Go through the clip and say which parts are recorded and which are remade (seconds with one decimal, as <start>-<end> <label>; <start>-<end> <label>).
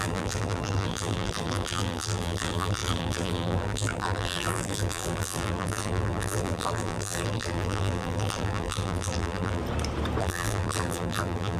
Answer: 0.0-9.6 remade; 9.6-10.2 recorded; 10.2-11.6 remade